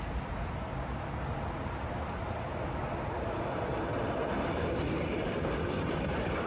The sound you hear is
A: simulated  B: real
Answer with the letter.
B